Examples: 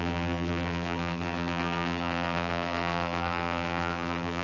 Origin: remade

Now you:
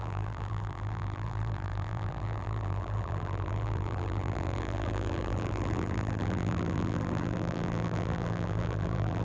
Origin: remade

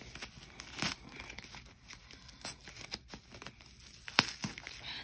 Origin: recorded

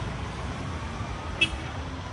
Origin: recorded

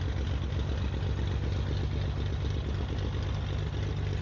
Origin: recorded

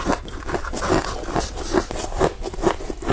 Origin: recorded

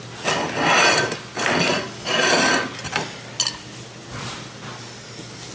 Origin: recorded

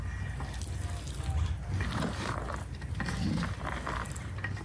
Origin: recorded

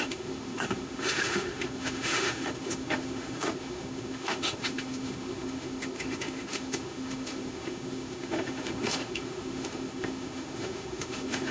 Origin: remade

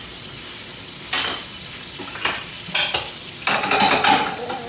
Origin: recorded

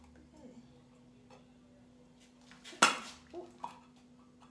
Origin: recorded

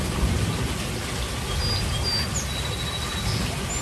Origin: recorded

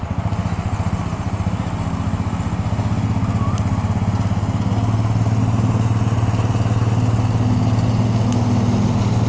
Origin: recorded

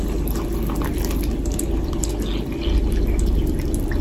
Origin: recorded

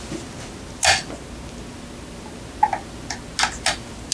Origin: recorded